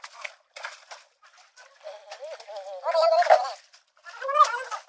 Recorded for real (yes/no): yes